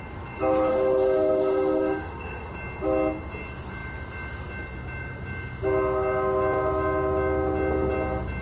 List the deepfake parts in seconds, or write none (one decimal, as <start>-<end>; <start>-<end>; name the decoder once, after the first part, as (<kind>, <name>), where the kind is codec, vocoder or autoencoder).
0.7-2.5 (autoencoder, DAC-VAE)